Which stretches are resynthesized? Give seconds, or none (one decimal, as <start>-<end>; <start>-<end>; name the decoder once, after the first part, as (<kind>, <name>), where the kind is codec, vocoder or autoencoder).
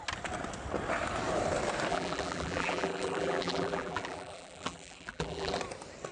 1.9-5.6 (vocoder, BigVGAN v2)